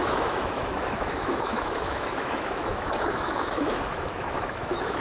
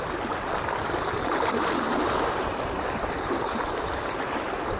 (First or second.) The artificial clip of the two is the first